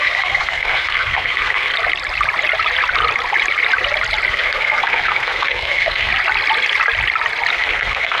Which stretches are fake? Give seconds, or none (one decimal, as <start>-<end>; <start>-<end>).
0.0-1.7; 4.3-6.1; 7.5-8.2